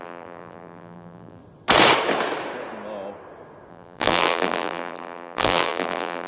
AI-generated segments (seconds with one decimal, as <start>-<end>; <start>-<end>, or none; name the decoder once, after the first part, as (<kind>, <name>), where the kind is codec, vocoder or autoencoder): 0.0-1.4 (vocoder, BigVGAN v2); 3.7-6.3